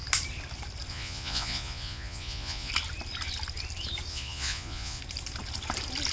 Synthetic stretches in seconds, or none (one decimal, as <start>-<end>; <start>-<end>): 0.9-2.7; 4.1-5.0